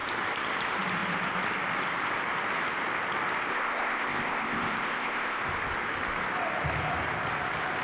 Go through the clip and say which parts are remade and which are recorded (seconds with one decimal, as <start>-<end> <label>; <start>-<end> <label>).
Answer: 0.0-3.5 recorded; 3.5-5.4 remade; 5.4-7.8 recorded